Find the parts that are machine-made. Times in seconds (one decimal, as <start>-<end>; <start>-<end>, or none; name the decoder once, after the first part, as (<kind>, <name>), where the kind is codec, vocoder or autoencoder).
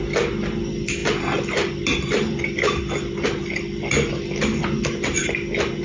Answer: none